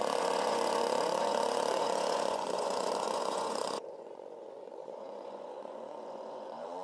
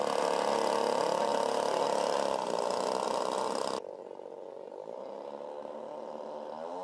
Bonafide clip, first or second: second